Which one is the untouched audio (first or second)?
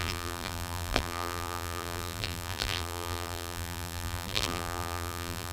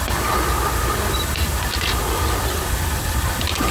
second